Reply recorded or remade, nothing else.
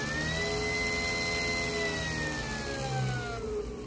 recorded